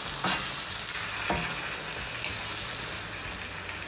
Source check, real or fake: real